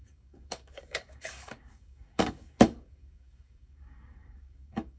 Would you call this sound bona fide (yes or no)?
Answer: no